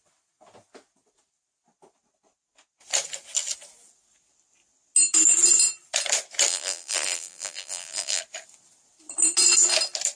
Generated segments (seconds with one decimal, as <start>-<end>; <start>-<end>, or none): 6.5-8.2